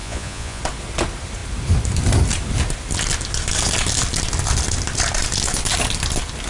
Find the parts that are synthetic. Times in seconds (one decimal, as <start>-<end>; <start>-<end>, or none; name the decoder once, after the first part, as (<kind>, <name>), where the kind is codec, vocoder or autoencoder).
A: 0.0-0.6 (vocoder, Vocos)